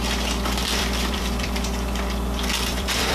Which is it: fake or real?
fake